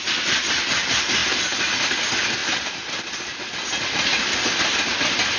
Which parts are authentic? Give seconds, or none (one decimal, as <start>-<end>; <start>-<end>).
0.0-5.4